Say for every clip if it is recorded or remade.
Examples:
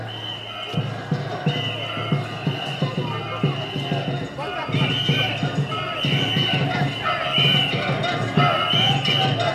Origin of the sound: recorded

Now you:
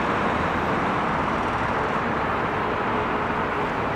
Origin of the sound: recorded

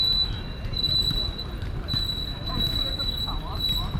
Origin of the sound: recorded